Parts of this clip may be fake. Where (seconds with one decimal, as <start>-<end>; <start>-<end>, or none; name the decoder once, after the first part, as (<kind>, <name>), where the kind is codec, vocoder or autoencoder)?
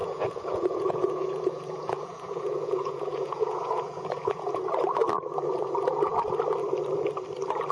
0.0-4.6 (vocoder, Vocos)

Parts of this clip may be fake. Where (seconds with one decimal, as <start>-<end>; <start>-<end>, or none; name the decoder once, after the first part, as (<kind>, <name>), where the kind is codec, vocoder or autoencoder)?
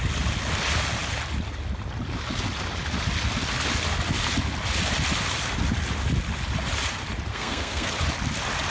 7.3-7.9 (codec, SNAC)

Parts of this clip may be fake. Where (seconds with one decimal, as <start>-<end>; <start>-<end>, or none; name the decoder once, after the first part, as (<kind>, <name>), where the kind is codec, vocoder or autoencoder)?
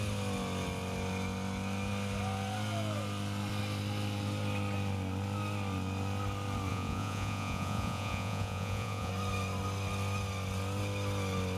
6.7-9.1 (vocoder, Vocos)